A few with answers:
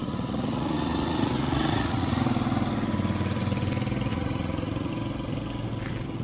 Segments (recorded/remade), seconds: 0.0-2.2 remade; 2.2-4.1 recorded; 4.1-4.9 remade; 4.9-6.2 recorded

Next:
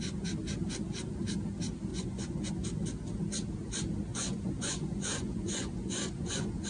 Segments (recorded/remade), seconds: 0.0-1.9 recorded; 1.9-2.5 remade; 2.5-4.1 recorded; 4.1-6.7 remade